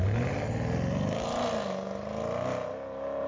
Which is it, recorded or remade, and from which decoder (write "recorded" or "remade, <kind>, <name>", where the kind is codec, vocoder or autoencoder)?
recorded